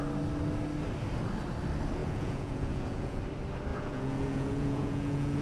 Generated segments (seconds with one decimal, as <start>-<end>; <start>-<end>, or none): 2.0-3.2; 3.7-5.4